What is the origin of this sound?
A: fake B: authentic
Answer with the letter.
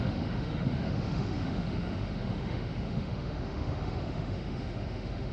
A